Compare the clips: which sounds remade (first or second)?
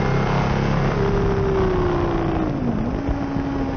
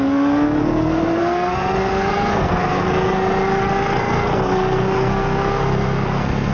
second